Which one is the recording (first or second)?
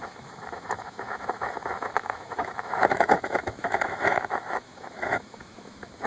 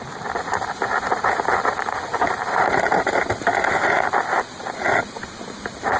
second